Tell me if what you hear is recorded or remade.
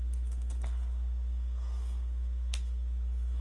remade